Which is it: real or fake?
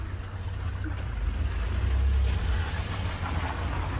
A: real